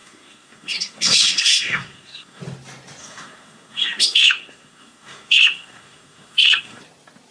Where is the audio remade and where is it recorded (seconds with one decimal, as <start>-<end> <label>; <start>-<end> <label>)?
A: 0.0-2.4 remade; 2.4-3.0 recorded; 3.0-6.8 remade; 6.8-7.3 recorded